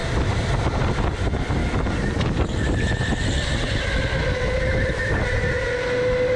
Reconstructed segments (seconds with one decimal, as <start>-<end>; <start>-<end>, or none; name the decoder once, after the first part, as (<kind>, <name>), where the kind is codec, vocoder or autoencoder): 0.0-0.5 (vocoder, BigVGAN v2)